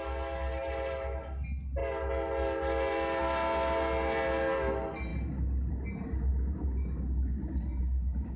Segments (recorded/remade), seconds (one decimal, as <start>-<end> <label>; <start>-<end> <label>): 0.0-8.4 recorded